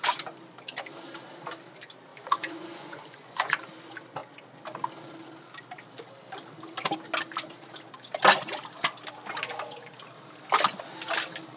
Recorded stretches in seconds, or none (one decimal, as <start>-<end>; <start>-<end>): 0.0-2.1; 3.6-11.6